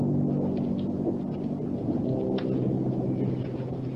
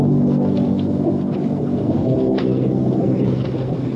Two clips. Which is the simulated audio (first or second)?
second